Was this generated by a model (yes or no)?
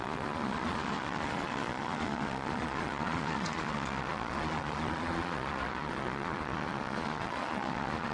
yes